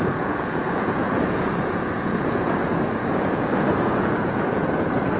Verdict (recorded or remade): remade